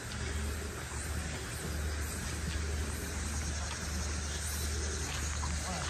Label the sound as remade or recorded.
recorded